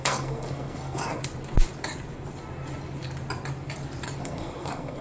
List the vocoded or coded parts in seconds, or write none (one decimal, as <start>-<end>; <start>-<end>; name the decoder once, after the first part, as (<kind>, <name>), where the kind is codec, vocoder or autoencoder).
0.0-1.2 (codec, SNAC); 4.2-5.0